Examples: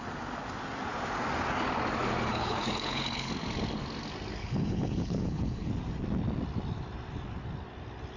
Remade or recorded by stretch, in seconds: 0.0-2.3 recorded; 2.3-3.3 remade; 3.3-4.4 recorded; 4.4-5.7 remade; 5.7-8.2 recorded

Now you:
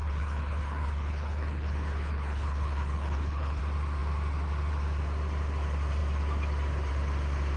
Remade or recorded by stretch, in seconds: 0.0-3.6 remade; 3.6-7.6 recorded

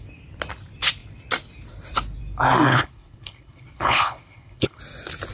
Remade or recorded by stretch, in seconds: 0.0-2.7 recorded; 2.7-4.8 remade; 4.8-5.3 recorded

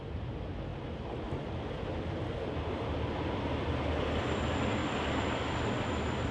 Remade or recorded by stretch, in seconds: 0.0-6.3 recorded